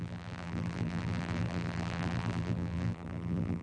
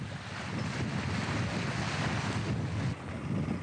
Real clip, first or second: second